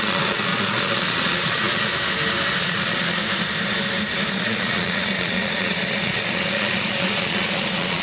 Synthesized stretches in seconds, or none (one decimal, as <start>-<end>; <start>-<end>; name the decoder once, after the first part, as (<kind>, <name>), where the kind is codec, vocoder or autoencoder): 0.0-1.9 (vocoder, Vocos); 2.6-3.2; 4.3-8.0